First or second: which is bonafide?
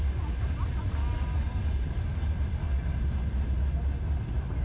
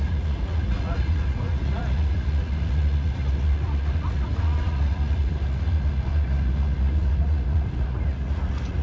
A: first